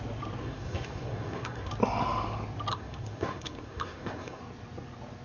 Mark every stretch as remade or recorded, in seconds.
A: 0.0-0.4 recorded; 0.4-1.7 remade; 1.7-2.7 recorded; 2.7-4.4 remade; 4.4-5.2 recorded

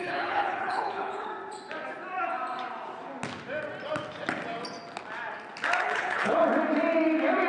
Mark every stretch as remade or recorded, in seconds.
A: 0.0-1.3 remade; 1.3-5.8 recorded; 5.8-6.4 remade; 6.4-7.5 recorded

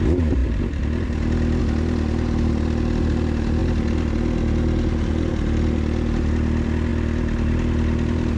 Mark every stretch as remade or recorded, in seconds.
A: 0.0-8.4 recorded

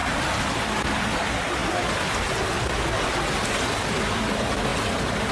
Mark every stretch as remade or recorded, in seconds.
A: 0.0-5.3 recorded

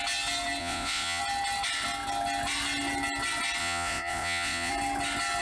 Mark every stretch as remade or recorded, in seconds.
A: 0.0-0.6 recorded; 0.6-1.2 remade; 1.2-3.6 recorded; 3.6-4.7 remade; 4.7-5.4 recorded

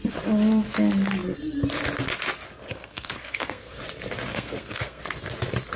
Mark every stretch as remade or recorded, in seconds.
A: 0.0-2.7 recorded; 2.7-3.8 remade; 3.8-4.3 recorded; 4.3-5.0 remade; 5.0-5.8 recorded

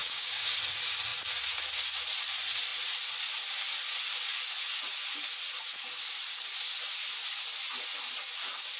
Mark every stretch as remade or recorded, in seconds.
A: 0.0-0.6 remade; 0.6-8.8 recorded

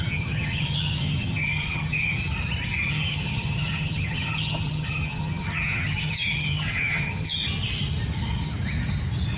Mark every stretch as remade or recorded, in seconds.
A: 0.0-2.2 remade; 2.2-2.9 recorded; 2.9-7.4 remade; 7.4-9.4 recorded